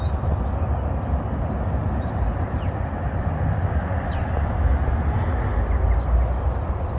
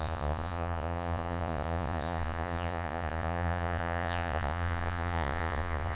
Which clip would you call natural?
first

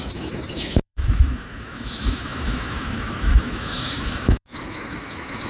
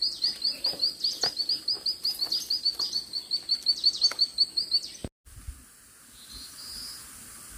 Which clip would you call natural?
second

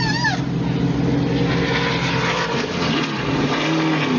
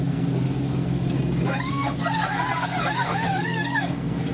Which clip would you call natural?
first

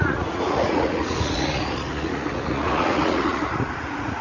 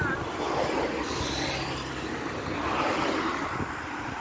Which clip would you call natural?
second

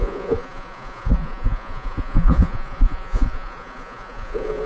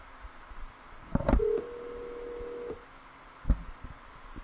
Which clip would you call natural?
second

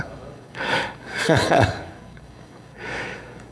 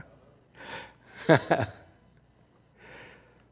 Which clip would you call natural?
second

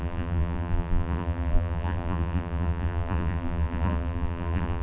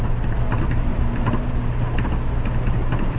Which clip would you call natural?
second